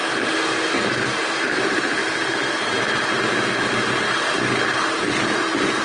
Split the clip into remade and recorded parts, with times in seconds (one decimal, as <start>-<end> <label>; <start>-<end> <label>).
0.0-0.9 recorded; 0.9-2.0 remade; 2.0-5.0 recorded; 5.0-5.8 remade